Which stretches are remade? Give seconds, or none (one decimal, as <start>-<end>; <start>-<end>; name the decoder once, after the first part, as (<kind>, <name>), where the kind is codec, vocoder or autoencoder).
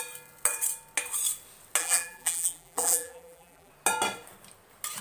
1.8-3.7 (vocoder, BigVGAN v2)